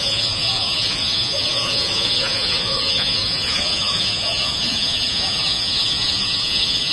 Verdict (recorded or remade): remade